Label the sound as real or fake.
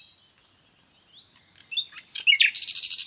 real